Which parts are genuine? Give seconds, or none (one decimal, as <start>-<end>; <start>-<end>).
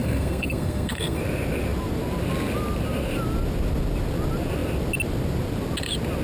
1.2-6.2